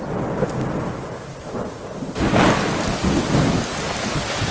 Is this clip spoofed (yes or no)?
no